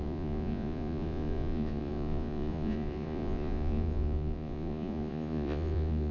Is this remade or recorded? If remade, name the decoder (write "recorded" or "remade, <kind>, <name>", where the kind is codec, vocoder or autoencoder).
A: remade, vocoder, Vocos